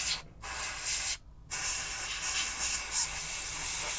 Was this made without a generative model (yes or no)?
yes